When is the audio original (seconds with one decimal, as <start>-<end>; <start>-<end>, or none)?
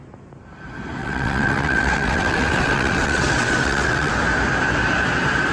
0.0-1.0; 4.1-5.5